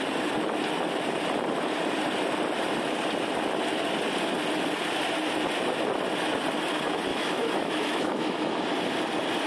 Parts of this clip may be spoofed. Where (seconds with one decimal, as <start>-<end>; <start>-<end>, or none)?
7.1-8.6